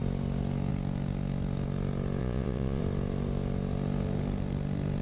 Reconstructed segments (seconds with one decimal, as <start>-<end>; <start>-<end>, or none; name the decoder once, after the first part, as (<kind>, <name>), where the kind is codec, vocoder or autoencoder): 2.2-2.8 (vocoder, Vocos)